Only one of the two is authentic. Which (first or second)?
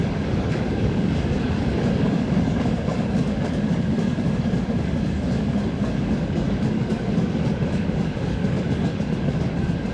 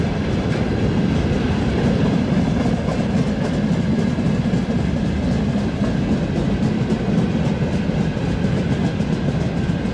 second